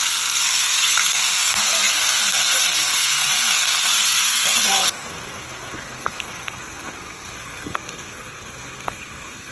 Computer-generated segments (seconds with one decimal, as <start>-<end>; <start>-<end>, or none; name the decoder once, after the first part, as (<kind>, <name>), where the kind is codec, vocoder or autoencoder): 0.0-9.5 (codec, SNAC)